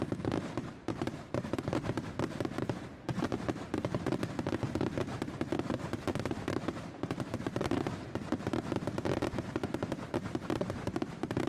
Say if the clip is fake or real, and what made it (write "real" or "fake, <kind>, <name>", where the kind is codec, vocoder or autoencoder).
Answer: fake, vocoder, BigVGAN v2